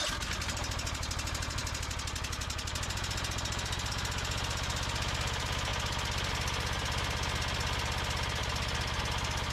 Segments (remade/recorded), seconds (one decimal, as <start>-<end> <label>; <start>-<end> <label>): 0.0-8.4 recorded; 8.4-9.0 remade; 9.0-9.5 recorded